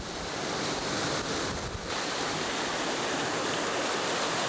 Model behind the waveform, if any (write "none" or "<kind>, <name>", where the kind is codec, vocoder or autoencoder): none